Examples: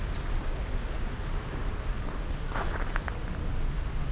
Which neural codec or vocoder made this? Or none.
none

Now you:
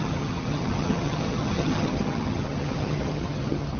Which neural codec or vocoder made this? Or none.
vocoder, HiFi-GAN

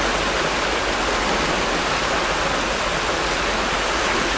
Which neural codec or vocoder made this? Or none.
none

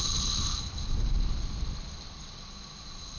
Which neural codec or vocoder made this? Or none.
none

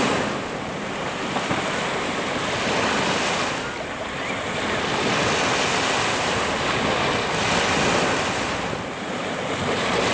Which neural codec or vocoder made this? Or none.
none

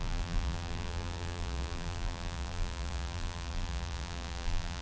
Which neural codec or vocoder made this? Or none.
vocoder, BigVGAN v2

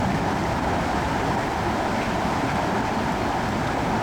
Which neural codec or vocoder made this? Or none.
none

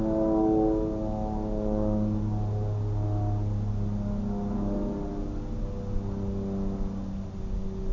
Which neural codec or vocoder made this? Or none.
none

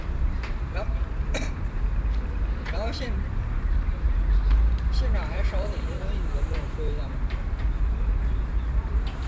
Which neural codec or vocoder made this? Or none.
vocoder, BigVGAN v2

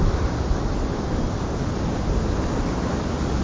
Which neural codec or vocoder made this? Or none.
none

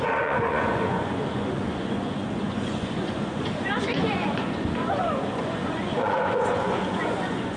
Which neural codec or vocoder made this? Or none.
vocoder, Vocos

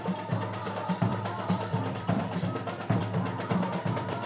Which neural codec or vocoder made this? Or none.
vocoder, BigVGAN v2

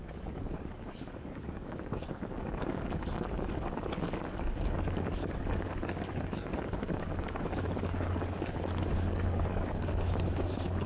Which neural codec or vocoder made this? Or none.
codec, DAC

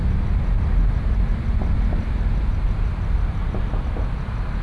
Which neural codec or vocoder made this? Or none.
none